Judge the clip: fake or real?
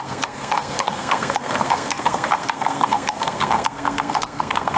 fake